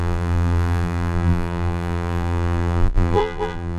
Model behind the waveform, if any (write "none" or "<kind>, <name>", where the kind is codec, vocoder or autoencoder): vocoder, BigVGAN v2